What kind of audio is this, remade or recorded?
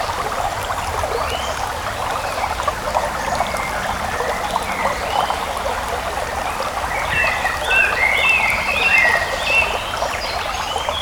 recorded